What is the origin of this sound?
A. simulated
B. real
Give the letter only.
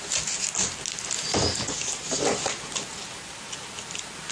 B